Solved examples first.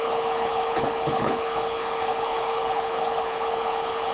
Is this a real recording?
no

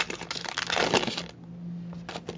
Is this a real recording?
yes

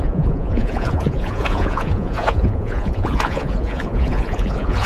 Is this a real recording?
no